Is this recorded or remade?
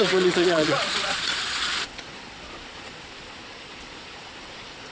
remade